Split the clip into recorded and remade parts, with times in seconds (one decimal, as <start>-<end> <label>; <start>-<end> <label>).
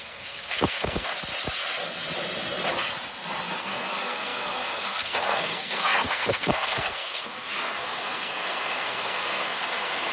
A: 0.0-1.1 remade; 1.1-3.6 recorded; 3.6-10.1 remade